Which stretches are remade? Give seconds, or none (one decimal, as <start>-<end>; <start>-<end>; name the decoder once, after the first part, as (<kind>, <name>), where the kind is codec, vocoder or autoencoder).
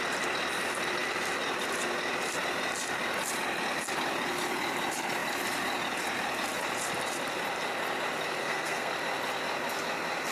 8.4-8.9 (codec, SNAC)